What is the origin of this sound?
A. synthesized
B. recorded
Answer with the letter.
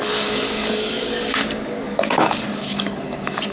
A